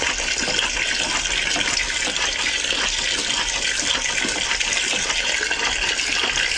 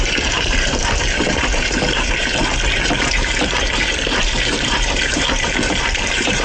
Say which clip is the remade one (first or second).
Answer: second